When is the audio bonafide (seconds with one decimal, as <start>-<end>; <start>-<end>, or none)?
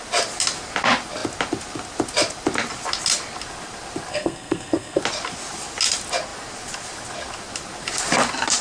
0.0-4.1; 5.0-8.6